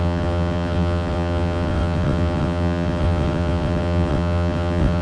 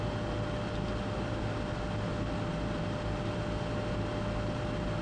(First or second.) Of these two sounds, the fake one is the first